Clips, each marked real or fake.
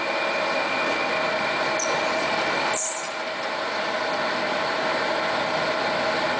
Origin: real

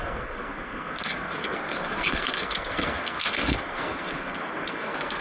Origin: fake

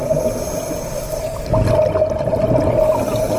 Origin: real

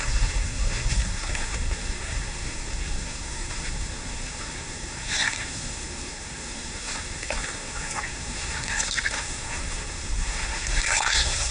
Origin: fake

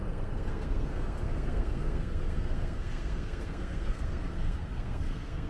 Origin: fake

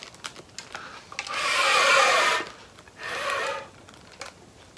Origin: real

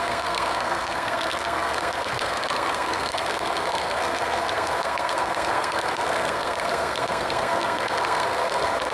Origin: fake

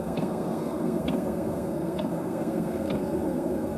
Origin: fake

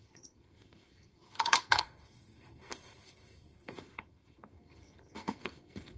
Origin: fake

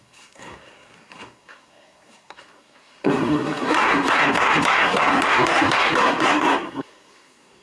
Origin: fake